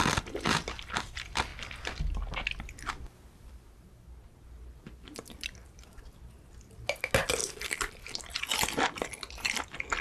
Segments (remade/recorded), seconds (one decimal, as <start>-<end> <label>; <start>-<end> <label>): 0.0-7.4 recorded; 7.4-8.4 remade; 8.4-10.0 recorded